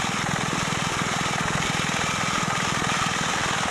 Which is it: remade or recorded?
recorded